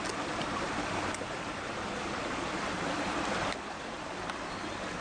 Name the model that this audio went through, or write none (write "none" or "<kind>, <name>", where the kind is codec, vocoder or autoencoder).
none